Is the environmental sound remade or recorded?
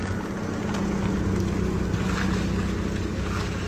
recorded